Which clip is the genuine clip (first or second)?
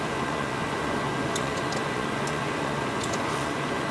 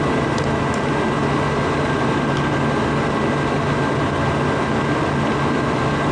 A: second